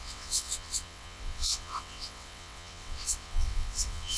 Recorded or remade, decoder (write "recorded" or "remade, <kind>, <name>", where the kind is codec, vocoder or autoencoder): remade, vocoder, WaveNeXt